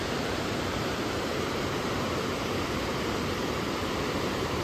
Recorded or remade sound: remade